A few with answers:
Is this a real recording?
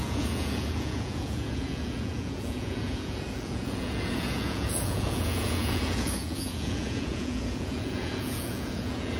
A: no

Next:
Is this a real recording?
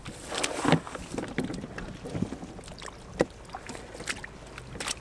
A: yes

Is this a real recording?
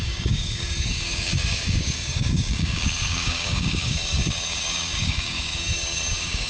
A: no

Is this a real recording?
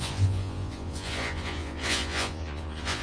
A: no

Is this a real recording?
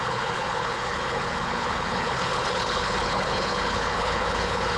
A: no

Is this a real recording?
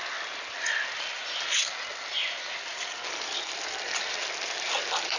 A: yes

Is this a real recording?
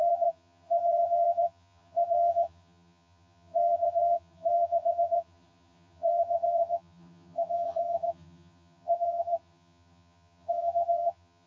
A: no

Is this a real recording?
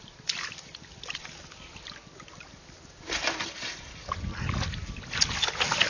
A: yes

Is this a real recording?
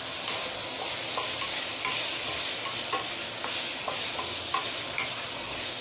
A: yes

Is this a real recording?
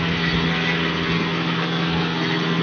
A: no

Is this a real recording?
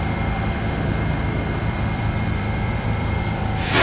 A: no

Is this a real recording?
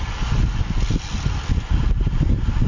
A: yes